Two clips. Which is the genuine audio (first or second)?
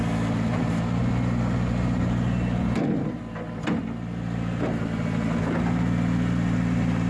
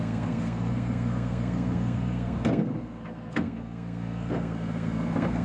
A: first